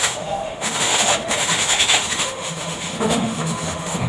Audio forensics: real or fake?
fake